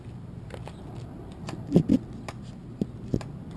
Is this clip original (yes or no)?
yes